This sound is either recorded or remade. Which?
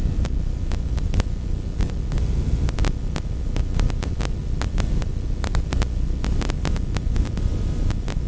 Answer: recorded